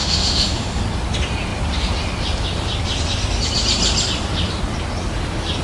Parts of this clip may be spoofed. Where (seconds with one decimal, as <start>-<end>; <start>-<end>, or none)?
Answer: 0.0-0.8